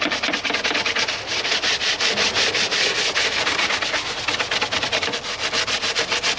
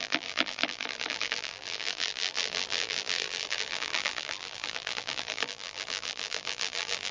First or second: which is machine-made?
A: second